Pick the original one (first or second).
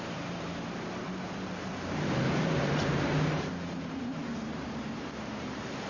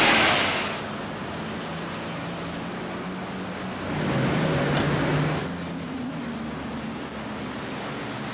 second